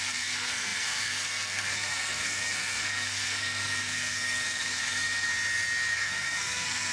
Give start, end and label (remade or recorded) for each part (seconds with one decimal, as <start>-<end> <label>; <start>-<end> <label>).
0.0-5.3 remade; 5.3-5.9 recorded; 5.9-6.9 remade